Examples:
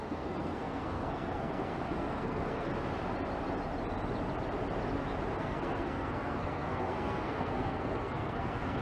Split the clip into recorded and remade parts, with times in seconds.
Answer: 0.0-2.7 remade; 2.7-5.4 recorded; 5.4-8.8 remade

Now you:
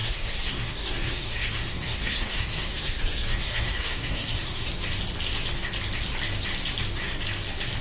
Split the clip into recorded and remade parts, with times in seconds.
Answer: 0.0-4.7 remade; 4.7-7.8 recorded

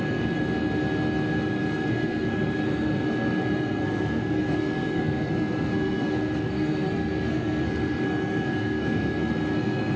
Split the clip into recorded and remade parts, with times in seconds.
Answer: 0.0-0.4 remade; 0.4-1.3 recorded; 1.3-10.0 remade

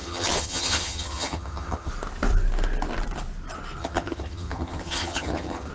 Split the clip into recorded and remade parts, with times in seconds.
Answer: 0.0-1.9 remade; 1.9-3.8 recorded; 3.8-5.7 remade

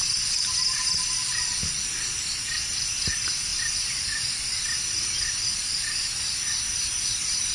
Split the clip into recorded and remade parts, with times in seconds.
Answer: 0.0-7.5 recorded

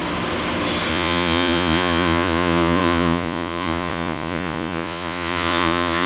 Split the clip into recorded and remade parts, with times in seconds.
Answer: 0.0-0.9 recorded; 0.9-6.1 remade

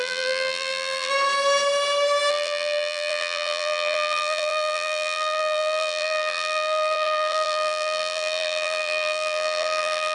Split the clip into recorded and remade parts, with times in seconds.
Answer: 0.0-1.1 remade; 1.1-2.3 recorded; 2.3-10.1 remade

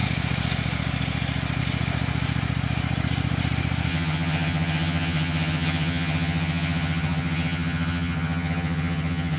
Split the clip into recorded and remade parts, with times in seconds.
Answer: 0.0-3.9 recorded; 3.9-9.4 remade